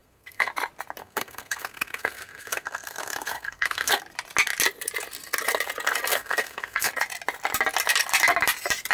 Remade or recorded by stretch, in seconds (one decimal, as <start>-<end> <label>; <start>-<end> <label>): 0.0-0.5 remade; 0.5-1.0 recorded; 1.0-4.0 remade; 4.0-6.1 recorded; 6.1-6.9 remade; 6.9-8.9 recorded